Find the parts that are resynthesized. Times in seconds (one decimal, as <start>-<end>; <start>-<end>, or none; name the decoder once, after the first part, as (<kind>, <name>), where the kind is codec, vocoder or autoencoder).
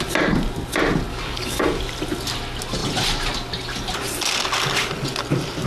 1.1-1.8 (codec, DAC)